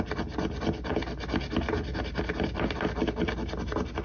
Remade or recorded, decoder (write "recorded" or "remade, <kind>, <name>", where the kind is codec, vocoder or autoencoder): recorded